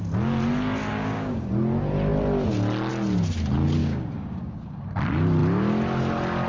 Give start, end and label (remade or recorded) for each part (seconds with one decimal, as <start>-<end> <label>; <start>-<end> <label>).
0.0-0.9 recorded; 0.9-1.5 remade; 1.5-3.8 recorded; 3.8-4.8 remade; 4.8-6.5 recorded